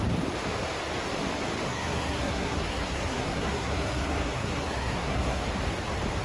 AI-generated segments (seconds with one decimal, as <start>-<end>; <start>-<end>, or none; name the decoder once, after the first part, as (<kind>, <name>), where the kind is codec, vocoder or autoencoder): 1.7-5.4 (codec, SNAC)